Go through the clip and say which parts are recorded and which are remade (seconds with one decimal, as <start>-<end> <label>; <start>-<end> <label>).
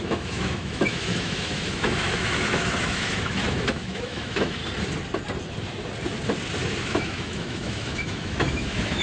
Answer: 0.0-4.6 remade; 4.6-6.8 recorded; 6.8-9.0 remade